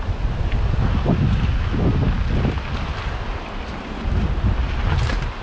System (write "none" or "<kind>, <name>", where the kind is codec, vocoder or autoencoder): none